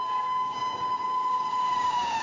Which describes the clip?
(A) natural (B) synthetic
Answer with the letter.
B